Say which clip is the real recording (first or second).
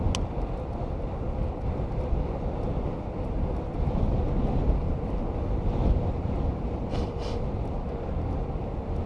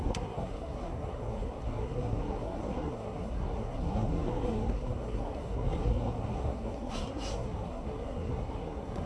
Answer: first